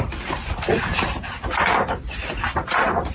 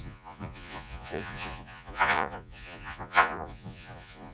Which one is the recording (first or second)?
first